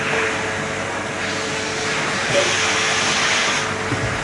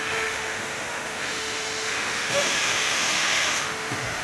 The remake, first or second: second